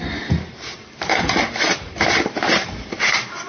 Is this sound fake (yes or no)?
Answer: yes